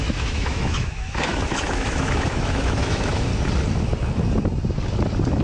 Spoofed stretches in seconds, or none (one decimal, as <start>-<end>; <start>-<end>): 0.0-3.3